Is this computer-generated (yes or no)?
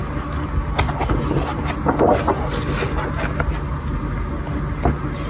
no